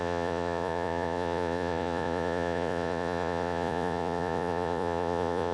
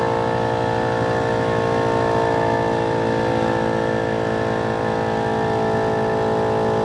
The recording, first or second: second